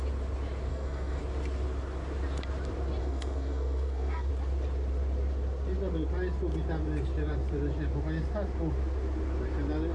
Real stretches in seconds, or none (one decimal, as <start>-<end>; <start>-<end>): 0.0-0.7; 1.2-3.0; 4.3-9.9